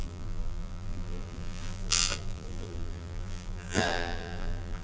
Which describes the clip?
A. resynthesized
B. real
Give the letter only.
A